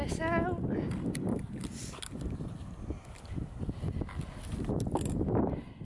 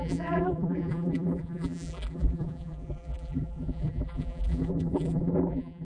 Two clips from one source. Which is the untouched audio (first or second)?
first